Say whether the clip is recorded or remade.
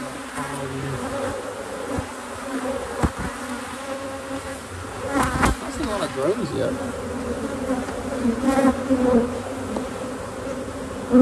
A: recorded